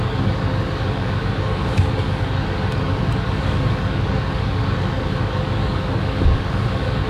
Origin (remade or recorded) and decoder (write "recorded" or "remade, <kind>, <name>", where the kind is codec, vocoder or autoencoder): remade, codec, DAC